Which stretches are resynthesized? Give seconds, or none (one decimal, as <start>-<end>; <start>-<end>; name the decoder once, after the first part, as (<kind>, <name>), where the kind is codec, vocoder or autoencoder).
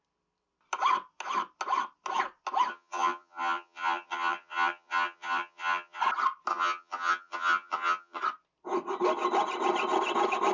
2.7-6.0 (vocoder, HiFi-GAN); 6.5-8.2